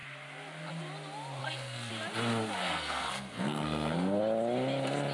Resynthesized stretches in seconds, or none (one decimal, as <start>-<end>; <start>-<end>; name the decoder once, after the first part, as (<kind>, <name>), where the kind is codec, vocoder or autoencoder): 1.4-1.9 (codec, SNAC); 2.6-4.2